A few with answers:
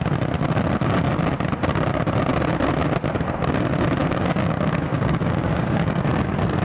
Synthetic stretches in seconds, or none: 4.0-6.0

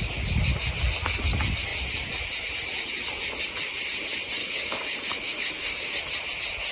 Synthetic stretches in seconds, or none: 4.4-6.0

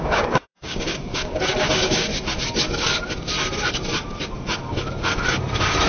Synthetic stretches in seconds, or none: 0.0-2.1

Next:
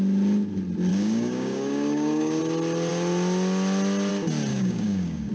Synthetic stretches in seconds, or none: 0.9-2.4; 4.5-5.3

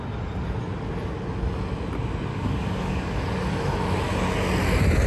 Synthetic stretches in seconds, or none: 2.3-3.2